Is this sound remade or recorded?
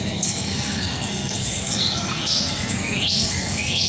remade